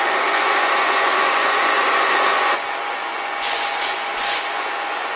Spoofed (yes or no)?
yes